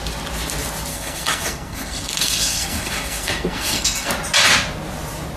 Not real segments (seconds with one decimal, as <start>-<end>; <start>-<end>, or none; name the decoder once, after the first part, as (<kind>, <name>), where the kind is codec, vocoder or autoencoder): 0.9-4.1 (codec, SNAC)